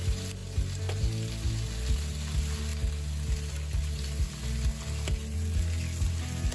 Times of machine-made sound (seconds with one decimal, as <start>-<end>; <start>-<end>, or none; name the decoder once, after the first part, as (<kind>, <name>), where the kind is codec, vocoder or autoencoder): none